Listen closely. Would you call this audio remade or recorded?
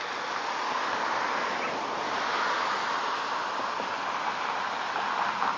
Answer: recorded